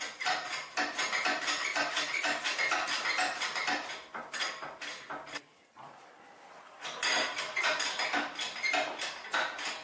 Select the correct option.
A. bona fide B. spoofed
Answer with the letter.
A